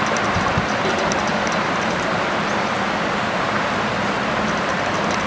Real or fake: real